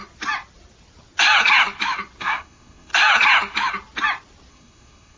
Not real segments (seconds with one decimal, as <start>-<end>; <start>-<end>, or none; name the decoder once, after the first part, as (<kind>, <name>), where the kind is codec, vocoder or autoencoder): 2.2-2.9 (codec, SNAC); 4.5-5.2